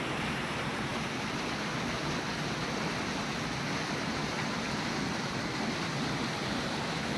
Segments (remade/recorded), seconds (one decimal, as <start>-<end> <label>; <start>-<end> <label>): 0.0-7.2 recorded